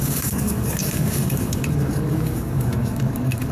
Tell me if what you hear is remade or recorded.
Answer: remade